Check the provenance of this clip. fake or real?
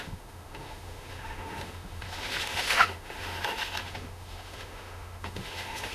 fake